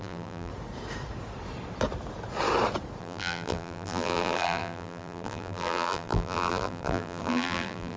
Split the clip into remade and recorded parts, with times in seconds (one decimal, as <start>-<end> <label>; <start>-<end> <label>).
0.0-0.5 remade; 0.5-3.0 recorded; 3.0-8.0 remade